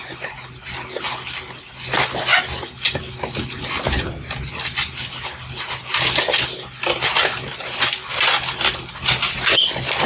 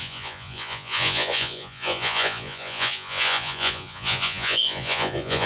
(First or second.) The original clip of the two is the first